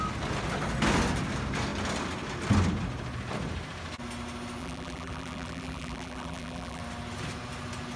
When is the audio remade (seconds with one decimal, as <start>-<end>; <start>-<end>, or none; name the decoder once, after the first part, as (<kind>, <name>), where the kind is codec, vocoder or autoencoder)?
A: 4.6-6.8 (vocoder, BigVGAN v2)